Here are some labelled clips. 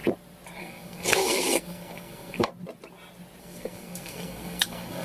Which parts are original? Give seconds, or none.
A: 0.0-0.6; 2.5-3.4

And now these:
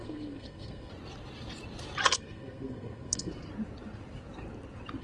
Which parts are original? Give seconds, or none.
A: 0.9-2.1; 3.3-5.0

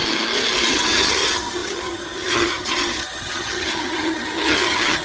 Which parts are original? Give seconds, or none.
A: 0.0-0.7

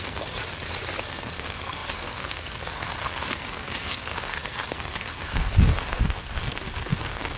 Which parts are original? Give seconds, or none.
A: 0.4-1.0

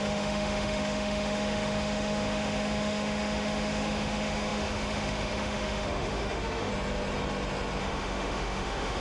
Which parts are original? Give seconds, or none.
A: 6.7-7.8

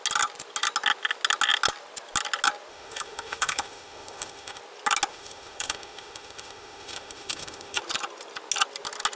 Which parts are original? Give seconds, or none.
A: 0.0-2.7; 4.6-5.1; 7.8-9.2

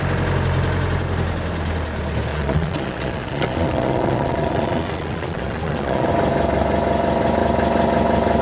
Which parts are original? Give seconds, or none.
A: 0.0-2.3; 6.1-8.4

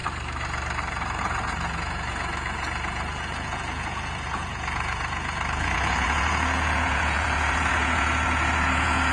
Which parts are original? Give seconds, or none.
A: 0.0-1.2